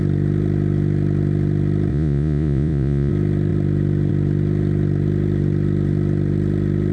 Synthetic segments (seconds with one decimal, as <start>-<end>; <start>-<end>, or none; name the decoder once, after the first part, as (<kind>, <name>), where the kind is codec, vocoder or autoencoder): 1.9-3.1 (vocoder, Vocos)

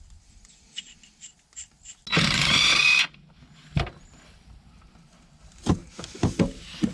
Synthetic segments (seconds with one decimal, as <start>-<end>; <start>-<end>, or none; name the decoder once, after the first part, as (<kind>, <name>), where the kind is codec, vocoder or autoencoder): none

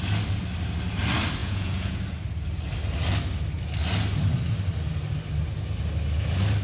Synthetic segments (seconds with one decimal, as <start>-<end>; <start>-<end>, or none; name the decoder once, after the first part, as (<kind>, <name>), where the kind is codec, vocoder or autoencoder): 1.4-2.0 (vocoder, Vocos)

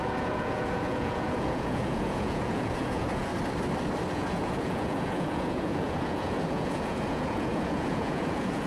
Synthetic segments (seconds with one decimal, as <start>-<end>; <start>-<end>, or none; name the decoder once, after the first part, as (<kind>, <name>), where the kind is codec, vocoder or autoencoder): 0.0-3.3 (vocoder, Vocos); 4.1-8.7

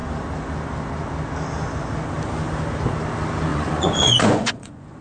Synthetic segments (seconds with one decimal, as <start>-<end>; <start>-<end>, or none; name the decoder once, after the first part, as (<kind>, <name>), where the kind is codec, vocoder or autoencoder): 3.5-5.0 (vocoder, Vocos)

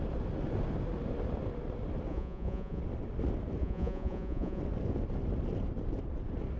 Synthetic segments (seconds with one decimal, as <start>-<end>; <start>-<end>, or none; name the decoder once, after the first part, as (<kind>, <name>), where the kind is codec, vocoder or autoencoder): 2.1-2.8 (vocoder, Vocos); 3.6-4.6